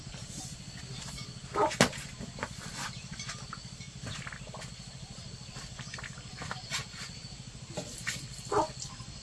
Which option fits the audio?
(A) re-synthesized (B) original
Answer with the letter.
B